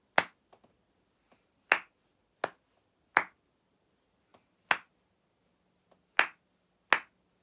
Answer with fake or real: real